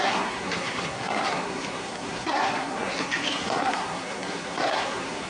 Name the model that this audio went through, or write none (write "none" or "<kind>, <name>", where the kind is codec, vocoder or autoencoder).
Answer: codec, SNAC